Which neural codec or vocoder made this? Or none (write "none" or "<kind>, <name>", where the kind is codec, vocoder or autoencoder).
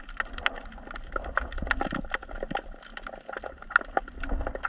none